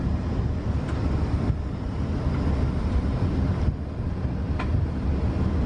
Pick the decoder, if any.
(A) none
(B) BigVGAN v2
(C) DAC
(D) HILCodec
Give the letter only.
A